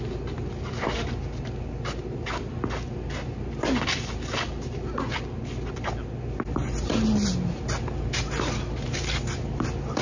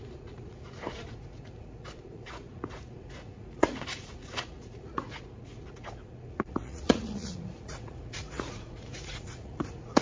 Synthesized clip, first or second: second